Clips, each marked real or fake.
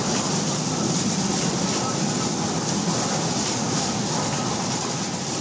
real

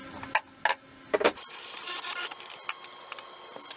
real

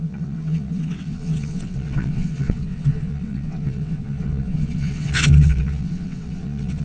fake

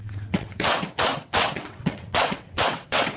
fake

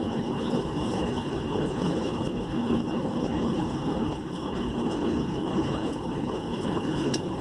fake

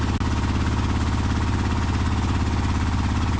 real